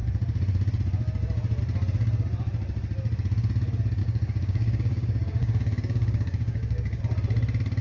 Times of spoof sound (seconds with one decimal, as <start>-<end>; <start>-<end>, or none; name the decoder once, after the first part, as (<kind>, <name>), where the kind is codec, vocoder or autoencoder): 4.0-7.0 (codec, DAC)